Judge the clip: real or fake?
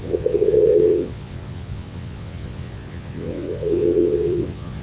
fake